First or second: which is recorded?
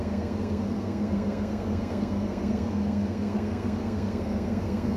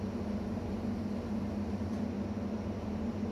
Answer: second